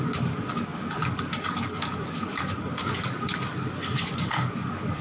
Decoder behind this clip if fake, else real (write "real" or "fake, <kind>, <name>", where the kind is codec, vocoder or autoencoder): fake, codec, DAC